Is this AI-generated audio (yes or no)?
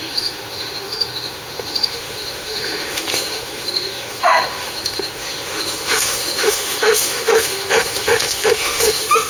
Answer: yes